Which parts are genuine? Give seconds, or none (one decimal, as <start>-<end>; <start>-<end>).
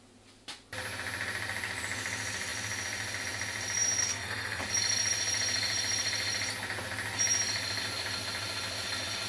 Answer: 0.0-4.0; 4.6-9.3